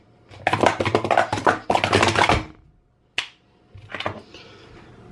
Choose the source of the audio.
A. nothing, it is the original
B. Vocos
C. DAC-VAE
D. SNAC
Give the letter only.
A